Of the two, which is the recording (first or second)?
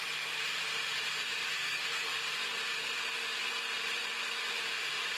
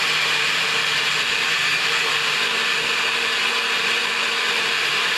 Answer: second